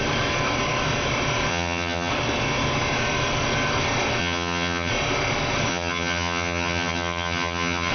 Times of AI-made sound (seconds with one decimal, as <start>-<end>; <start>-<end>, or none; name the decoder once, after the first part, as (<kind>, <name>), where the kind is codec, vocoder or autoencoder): 1.5-2.1 (vocoder, HiFi-GAN); 4.2-4.9; 5.7-7.9